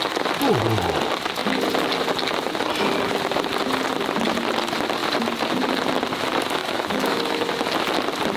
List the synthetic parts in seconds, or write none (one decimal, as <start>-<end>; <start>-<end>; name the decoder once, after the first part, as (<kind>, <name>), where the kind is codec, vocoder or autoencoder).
6.6-7.5 (autoencoder, DAC-VAE)